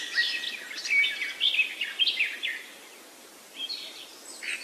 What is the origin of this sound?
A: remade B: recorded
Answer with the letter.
B